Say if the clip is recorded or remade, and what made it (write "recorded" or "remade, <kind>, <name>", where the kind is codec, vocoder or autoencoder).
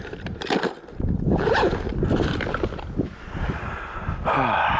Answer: recorded